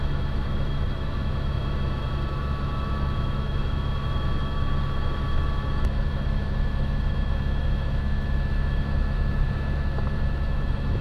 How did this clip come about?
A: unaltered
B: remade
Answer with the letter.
B